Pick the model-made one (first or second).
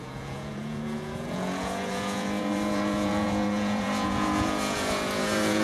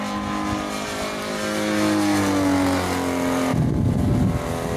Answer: first